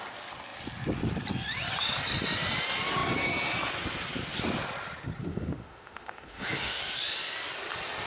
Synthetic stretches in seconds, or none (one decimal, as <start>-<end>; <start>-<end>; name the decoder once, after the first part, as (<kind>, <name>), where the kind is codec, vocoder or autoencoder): 5.2-6.8 (autoencoder, DAC-VAE)